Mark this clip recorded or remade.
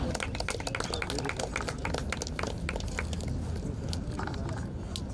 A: recorded